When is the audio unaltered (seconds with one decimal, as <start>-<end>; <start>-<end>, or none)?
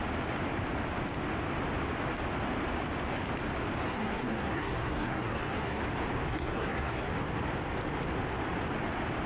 0.0-3.8; 5.8-6.3; 7.1-9.3